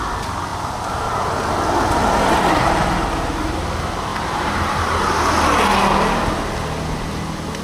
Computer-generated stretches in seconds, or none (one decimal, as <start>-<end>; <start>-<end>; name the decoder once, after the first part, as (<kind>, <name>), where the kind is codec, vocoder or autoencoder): 4.1-4.8 (vocoder, BigVGAN v2)